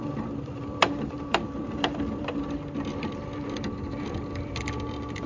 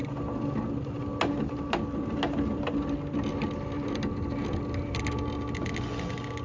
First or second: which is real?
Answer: second